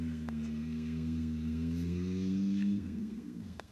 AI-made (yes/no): yes